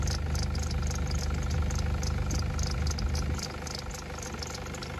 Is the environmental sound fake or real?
real